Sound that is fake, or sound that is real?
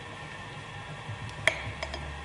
real